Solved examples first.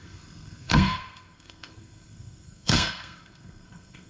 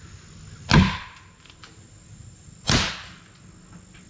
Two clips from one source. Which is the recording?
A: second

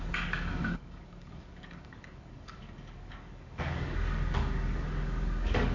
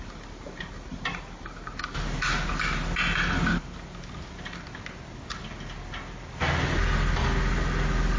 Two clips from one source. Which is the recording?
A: second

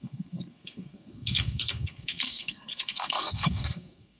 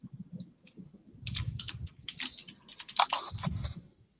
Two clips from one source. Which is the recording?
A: second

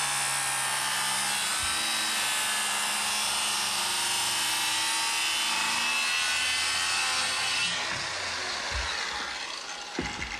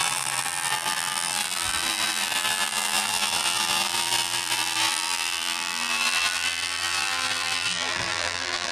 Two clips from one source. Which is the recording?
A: first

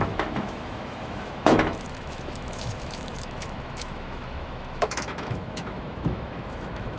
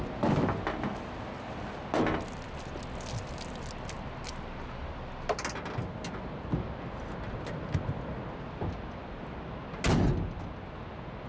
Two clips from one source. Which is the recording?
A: second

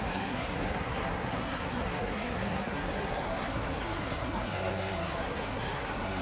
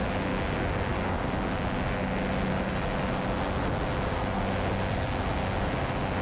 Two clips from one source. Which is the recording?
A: second